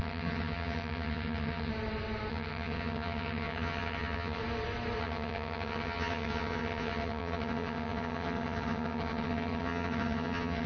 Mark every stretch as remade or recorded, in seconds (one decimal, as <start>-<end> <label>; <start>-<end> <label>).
0.0-1.7 remade; 1.7-2.3 recorded; 2.3-4.4 remade; 4.4-5.0 recorded; 5.0-10.7 remade